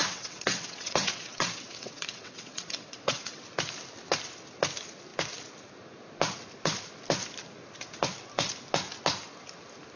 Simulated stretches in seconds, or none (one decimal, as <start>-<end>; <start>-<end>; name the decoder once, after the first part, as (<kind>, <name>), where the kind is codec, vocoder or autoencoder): 0.0-3.4 (vocoder, WaveNeXt)

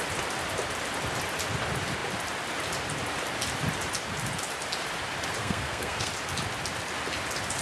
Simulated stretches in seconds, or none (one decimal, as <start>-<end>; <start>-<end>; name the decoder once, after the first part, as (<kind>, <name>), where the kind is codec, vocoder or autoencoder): 5.4-6.1 (codec, SNAC)

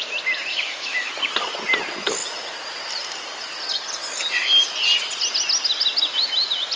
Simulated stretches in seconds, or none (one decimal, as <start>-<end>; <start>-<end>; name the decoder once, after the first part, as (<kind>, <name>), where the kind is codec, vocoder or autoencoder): 0.5-1.1 (autoencoder, DAC-VAE)

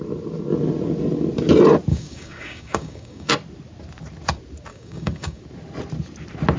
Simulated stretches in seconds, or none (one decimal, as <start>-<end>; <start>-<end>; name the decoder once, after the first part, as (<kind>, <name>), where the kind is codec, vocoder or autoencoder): 1.9-3.3 (codec, DAC); 4.7-5.4

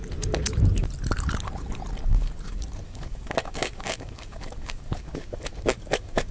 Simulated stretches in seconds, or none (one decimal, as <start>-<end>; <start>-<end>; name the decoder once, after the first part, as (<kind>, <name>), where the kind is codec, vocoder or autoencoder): 2.1-6.3 (codec, DAC)

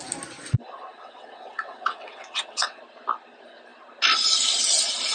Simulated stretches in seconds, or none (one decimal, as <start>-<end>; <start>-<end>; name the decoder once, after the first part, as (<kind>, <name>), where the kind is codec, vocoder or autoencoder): 0.9-2.8 (vocoder, WaveNeXt)

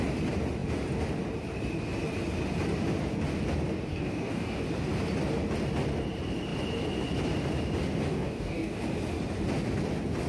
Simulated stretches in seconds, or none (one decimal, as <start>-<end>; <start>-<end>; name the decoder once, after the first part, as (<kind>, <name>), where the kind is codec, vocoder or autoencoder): 3.9-4.6 (codec, DAC); 8.1-8.8

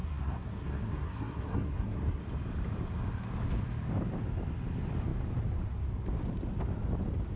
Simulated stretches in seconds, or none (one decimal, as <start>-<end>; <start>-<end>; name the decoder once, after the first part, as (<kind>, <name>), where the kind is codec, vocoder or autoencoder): 0.0-2.2 (codec, SNAC)